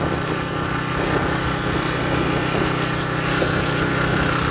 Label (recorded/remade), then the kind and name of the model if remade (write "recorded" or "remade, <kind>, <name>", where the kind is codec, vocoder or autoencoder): recorded